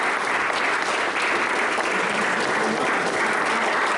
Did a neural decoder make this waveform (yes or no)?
no